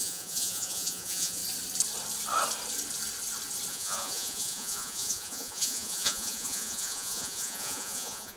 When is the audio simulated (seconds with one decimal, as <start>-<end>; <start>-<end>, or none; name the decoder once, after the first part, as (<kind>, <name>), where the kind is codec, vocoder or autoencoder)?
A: 0.0-1.4 (vocoder, Vocos); 3.7-8.4